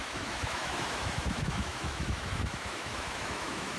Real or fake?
fake